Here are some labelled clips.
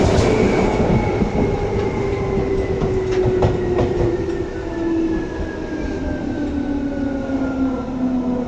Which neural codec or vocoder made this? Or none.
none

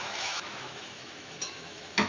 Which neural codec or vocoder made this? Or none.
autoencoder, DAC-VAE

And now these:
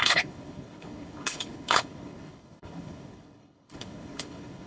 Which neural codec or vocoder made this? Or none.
codec, HILCodec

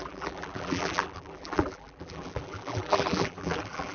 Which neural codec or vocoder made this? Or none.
vocoder, BigVGAN v2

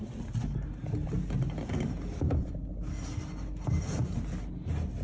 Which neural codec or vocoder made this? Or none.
none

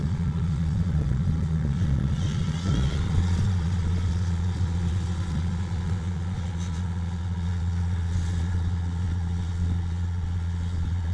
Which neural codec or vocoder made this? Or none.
vocoder, Vocos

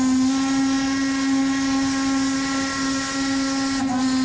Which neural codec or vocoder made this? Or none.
none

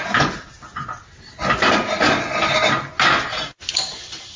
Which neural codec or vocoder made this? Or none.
none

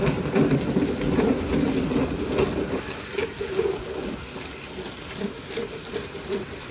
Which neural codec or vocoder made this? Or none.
none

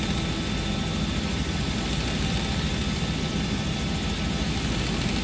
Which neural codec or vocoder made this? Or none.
none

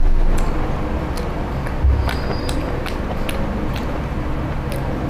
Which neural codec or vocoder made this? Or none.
none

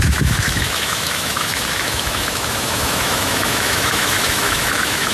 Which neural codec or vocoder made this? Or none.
autoencoder, DAC-VAE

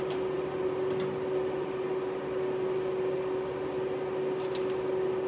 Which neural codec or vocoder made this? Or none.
none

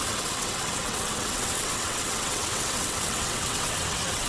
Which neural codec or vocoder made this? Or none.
vocoder, WaveNeXt